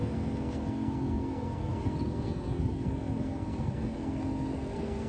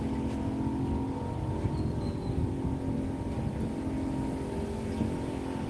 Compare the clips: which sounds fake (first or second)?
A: first